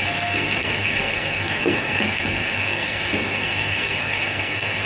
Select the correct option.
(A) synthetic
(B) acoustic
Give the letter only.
A